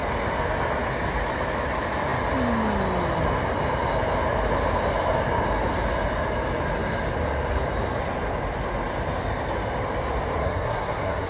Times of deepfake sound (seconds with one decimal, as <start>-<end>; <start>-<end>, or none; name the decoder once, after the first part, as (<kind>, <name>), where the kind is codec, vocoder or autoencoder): 10.4-11.3 (codec, SNAC)